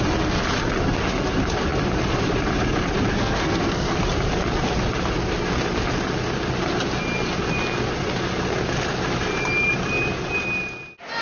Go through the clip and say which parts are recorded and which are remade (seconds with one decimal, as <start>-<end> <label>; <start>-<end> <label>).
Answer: 0.0-3.1 recorded; 3.1-3.9 remade; 3.9-11.2 recorded